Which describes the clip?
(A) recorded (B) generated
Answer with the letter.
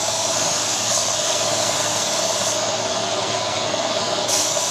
B